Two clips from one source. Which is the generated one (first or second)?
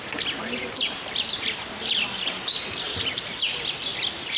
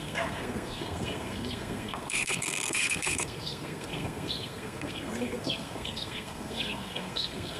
second